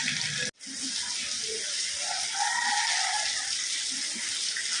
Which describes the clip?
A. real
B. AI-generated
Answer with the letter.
A